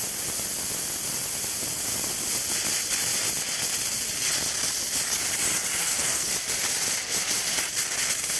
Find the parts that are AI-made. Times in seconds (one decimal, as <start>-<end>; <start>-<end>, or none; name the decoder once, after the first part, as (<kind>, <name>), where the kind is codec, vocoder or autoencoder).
5.8-6.3 (codec, SNAC)